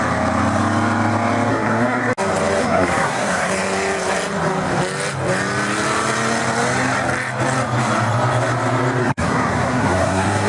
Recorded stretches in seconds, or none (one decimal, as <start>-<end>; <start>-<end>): 0.0-1.5; 2.0-2.6; 3.5-9.0